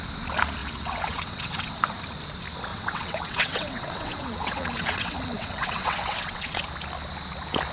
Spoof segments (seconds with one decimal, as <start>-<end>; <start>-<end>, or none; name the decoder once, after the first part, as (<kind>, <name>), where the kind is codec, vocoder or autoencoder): 0.6-1.7 (vocoder, WaveNeXt); 2.7-6.6